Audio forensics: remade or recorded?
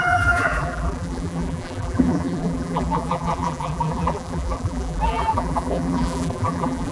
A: remade